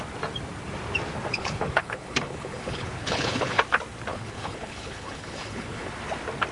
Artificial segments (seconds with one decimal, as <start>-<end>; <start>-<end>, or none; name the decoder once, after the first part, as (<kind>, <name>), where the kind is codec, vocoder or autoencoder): 1.3-3.6 (codec, HILCodec); 4.1-5.9